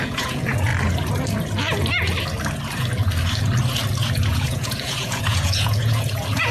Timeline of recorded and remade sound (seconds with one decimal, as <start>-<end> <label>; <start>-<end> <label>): 0.0-0.7 remade; 0.7-4.1 recorded; 4.1-6.5 remade